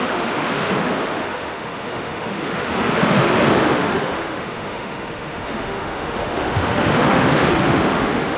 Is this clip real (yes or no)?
no